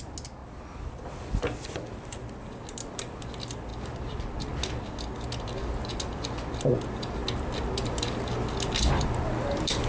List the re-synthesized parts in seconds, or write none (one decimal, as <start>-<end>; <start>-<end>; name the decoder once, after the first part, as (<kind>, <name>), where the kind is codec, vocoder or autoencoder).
none